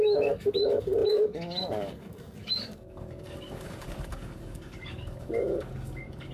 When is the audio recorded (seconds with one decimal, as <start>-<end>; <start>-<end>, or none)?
none